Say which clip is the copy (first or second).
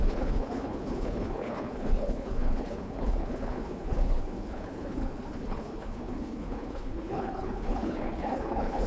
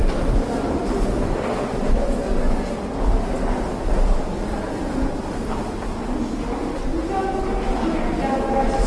first